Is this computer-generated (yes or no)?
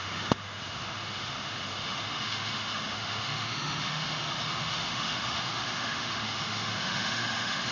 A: yes